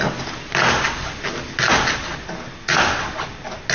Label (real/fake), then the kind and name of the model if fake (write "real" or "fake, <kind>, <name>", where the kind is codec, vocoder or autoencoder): real